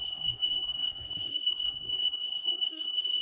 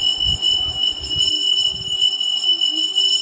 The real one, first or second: second